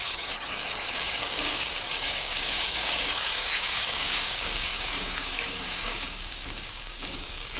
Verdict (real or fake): fake